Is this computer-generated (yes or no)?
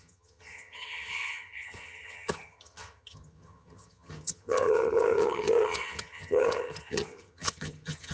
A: yes